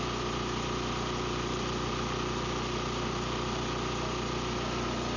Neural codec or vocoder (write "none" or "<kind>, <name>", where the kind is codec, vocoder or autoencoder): none